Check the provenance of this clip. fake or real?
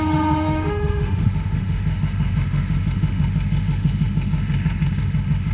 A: fake